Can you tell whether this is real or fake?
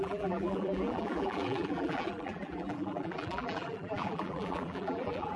fake